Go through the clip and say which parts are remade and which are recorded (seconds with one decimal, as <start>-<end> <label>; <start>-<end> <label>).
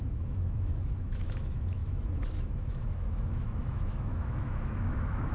0.0-5.3 remade